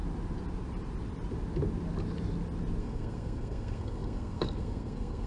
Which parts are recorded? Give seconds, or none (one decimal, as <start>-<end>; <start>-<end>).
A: 0.0-2.8